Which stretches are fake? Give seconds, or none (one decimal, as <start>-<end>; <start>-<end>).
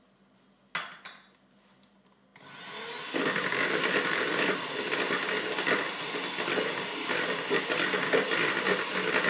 none